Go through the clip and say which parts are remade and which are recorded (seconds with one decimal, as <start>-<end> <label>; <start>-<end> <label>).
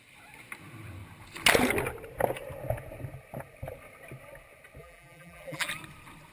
0.0-4.8 recorded; 4.8-5.7 remade; 5.7-6.3 recorded